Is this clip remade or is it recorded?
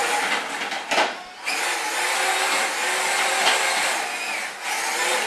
recorded